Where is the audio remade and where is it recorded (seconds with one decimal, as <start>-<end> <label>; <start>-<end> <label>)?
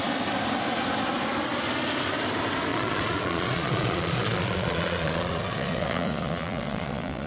0.0-2.7 recorded; 2.7-7.3 remade